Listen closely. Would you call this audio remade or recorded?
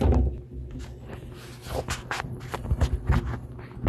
recorded